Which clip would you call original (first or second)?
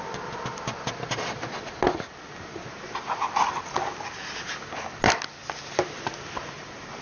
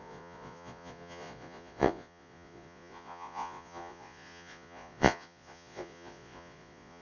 first